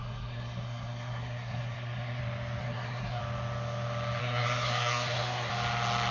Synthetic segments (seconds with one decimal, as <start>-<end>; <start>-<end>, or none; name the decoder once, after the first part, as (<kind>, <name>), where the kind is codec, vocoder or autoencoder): 0.0-2.2 (codec, SNAC); 2.6-3.2; 4.2-5.5